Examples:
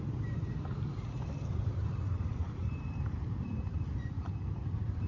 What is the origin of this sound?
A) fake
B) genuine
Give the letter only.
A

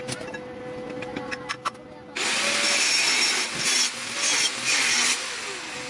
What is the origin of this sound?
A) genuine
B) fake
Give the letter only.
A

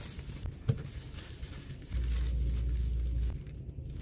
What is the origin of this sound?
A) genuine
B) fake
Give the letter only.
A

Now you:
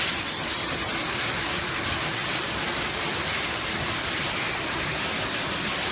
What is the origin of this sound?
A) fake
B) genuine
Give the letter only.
B